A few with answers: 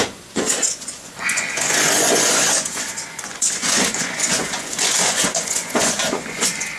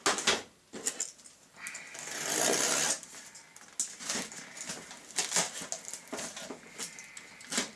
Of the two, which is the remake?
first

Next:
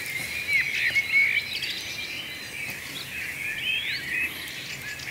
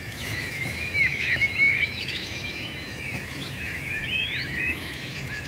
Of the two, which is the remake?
second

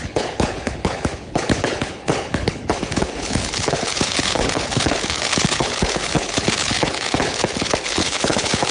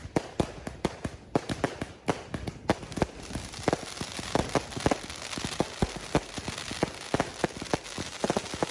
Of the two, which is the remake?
first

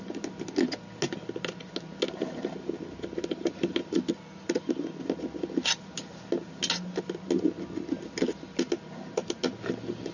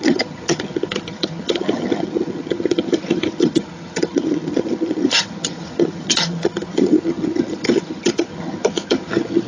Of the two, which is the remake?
second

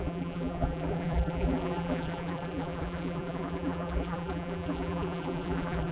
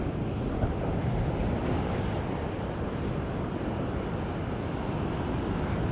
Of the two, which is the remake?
first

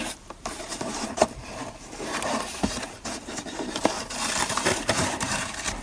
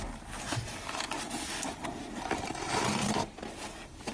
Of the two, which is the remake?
first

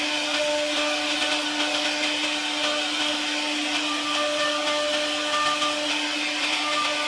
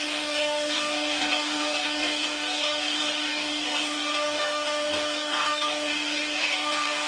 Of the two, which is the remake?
second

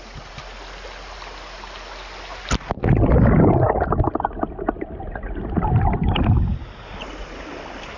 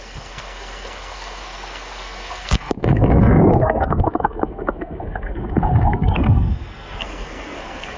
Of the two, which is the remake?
second